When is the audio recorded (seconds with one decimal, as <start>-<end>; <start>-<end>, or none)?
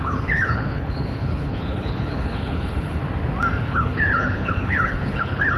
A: 3.0-3.6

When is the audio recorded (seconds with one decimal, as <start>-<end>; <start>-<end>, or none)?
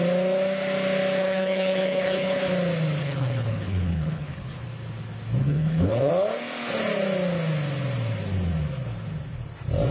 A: 0.0-1.2; 2.4-3.0; 4.6-5.4; 6.1-9.9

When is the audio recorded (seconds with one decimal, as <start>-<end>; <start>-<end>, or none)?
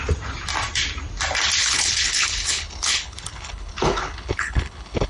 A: 0.0-1.6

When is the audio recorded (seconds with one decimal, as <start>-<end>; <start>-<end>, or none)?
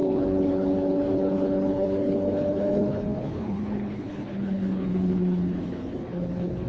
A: none